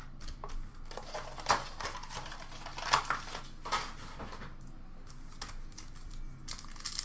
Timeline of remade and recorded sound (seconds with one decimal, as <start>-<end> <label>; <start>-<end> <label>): 0.0-7.0 recorded